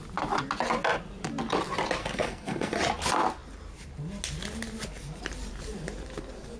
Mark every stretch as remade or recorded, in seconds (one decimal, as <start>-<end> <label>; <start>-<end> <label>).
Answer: 0.0-2.0 recorded; 2.0-2.8 remade; 2.8-6.6 recorded